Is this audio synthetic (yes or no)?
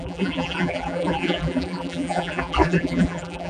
yes